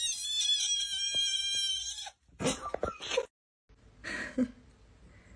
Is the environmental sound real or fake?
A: real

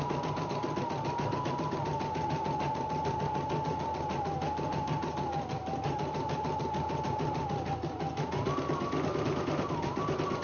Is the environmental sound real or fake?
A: real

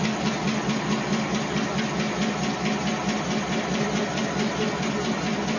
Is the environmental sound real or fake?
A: real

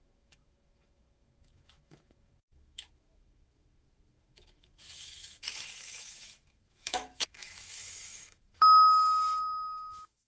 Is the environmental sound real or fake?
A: fake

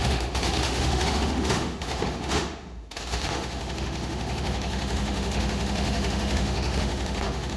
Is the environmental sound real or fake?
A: fake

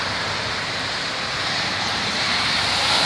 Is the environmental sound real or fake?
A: fake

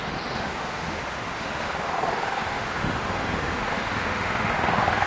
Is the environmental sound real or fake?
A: fake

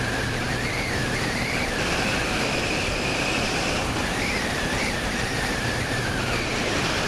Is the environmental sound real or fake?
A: fake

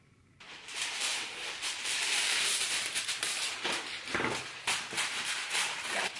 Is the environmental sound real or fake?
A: fake